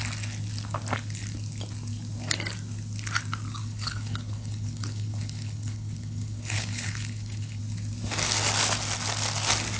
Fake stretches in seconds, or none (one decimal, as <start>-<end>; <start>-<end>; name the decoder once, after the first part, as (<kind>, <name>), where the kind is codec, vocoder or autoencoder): 3.6-7.6 (codec, HILCodec)